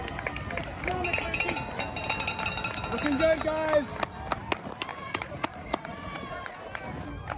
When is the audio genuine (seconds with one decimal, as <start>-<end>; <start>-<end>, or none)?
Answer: 0.0-4.9; 6.6-7.4